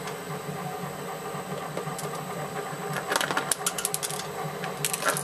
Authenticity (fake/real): real